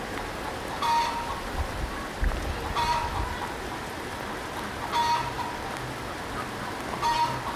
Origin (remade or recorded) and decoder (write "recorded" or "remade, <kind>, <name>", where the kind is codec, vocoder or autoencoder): recorded